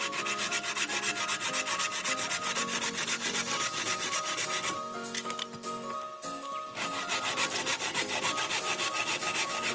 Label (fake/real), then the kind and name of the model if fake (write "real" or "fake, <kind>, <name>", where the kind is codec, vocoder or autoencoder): real